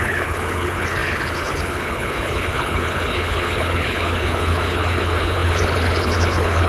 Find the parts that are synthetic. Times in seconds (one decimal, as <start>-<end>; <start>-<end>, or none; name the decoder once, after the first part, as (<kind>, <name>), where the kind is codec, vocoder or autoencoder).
0.0-6.7 (codec, HILCodec)